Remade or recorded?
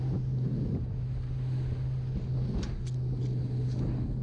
recorded